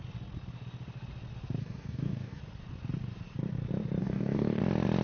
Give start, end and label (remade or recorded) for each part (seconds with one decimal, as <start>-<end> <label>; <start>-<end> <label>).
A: 0.0-1.6 recorded; 1.6-2.4 remade; 2.4-4.0 recorded; 4.0-4.6 remade; 4.6-5.0 recorded